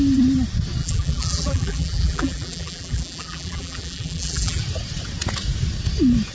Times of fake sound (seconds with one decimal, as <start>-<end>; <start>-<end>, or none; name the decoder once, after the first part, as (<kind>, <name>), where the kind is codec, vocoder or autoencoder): 0.8-4.6 (vocoder, BigVGAN v2)